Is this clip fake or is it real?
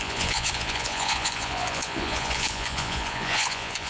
fake